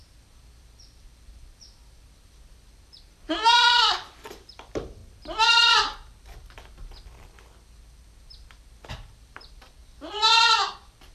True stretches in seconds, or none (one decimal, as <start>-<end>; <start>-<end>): 5.0-8.9; 9.8-10.7